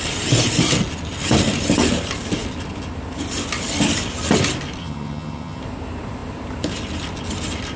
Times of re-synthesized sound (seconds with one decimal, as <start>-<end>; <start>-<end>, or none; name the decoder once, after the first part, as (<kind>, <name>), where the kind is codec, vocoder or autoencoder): 4.8-5.6 (vocoder, HiFi-GAN)